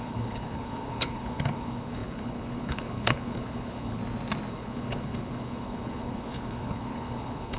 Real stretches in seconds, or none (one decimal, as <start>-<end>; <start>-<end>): 4.0-4.5